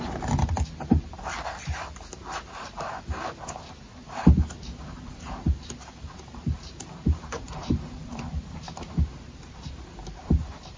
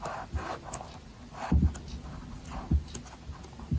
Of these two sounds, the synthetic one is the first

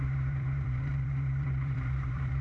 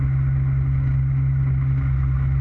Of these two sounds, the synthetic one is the first